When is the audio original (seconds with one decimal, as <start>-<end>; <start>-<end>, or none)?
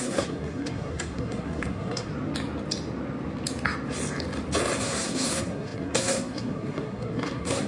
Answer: 2.1-4.8